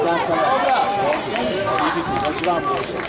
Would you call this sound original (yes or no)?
yes